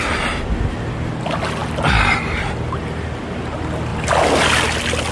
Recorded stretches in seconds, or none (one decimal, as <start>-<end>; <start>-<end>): 0.0-5.1